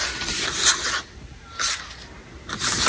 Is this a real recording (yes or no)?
yes